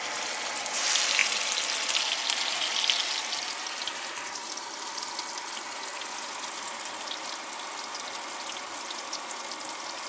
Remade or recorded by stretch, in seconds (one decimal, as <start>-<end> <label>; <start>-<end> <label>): 0.0-10.1 recorded